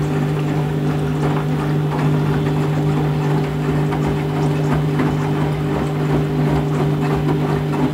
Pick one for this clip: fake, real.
real